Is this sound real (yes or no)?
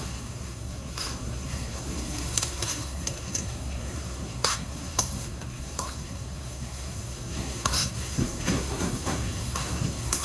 no